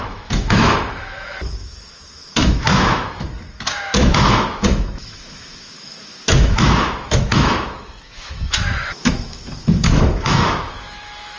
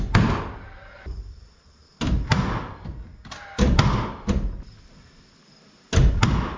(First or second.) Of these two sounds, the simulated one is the first